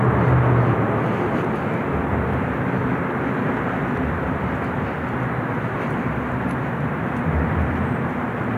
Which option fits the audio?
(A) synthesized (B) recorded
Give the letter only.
B